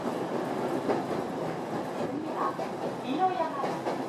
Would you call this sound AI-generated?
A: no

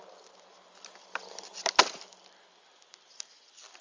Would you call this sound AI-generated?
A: no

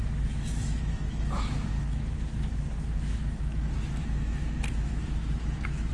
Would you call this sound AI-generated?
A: yes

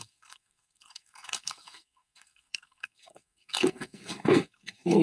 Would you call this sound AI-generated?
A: yes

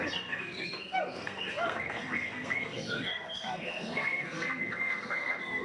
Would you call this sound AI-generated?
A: yes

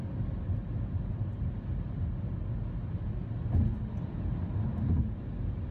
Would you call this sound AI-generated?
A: no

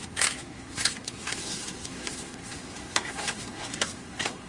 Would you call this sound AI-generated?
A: yes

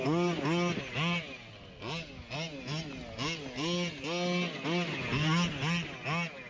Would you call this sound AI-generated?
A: no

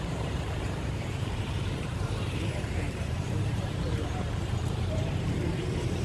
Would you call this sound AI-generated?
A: yes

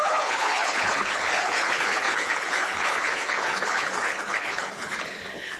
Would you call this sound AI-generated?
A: yes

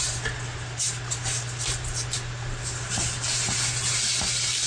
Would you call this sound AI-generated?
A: no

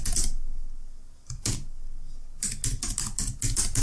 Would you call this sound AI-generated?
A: no